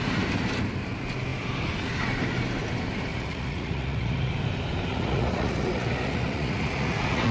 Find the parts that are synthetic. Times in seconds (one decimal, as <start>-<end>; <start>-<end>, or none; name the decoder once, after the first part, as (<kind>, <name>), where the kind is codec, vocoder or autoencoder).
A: 3.1-4.3 (vocoder, Vocos); 4.9-7.3